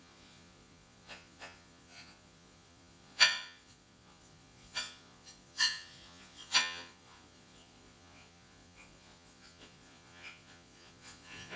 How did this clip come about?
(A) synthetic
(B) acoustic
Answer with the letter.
A